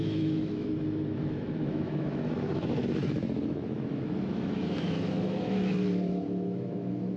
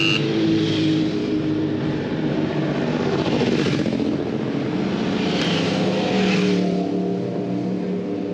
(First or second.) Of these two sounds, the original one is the second